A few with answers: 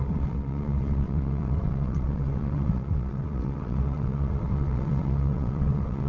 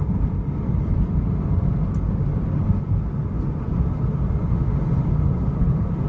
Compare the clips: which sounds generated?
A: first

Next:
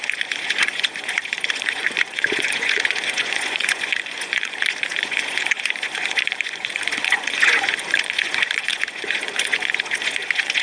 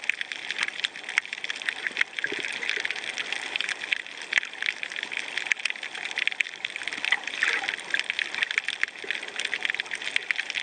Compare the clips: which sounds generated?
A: first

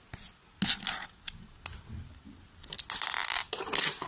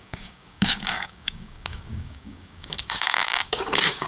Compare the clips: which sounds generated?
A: second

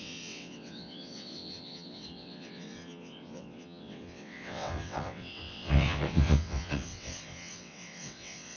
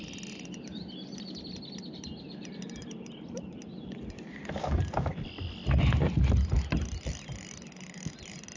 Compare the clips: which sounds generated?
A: first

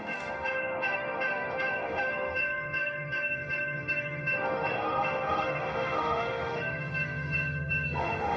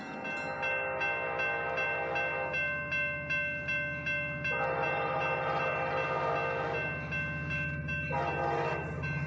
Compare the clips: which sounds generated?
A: first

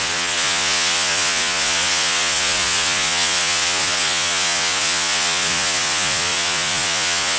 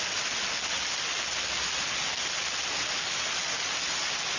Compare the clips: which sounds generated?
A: first